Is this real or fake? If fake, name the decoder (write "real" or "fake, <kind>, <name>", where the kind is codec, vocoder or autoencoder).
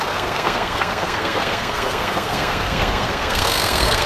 fake, codec, SNAC